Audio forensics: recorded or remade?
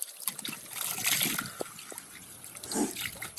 recorded